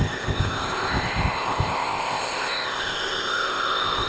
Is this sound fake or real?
fake